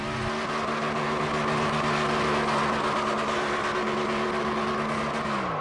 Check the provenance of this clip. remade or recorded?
recorded